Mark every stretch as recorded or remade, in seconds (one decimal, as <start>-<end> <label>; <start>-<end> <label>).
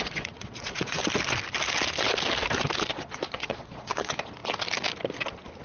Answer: 0.0-1.0 remade; 1.0-2.9 recorded; 2.9-4.4 remade; 4.4-5.6 recorded